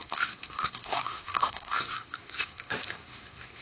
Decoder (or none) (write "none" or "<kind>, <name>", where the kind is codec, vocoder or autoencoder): codec, SNAC